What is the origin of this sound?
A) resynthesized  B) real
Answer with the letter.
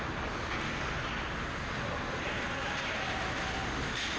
B